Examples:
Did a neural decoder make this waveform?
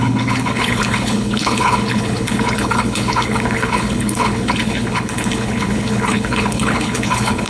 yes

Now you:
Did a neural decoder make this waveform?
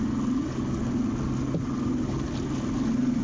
no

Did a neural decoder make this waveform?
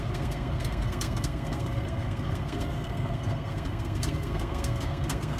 yes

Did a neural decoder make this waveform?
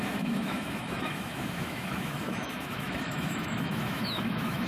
yes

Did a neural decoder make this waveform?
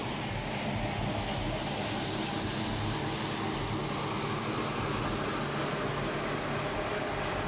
no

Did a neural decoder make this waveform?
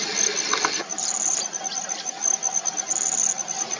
no